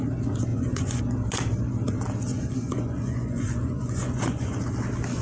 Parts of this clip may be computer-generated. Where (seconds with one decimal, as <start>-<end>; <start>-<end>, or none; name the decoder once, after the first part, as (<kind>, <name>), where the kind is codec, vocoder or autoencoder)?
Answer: 0.5-1.0 (vocoder, Vocos); 2.3-4.6